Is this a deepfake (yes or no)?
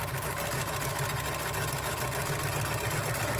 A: no